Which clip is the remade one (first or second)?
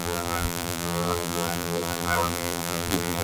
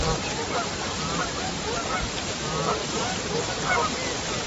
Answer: first